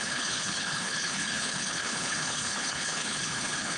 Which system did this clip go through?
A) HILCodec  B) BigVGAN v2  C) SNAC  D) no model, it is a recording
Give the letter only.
A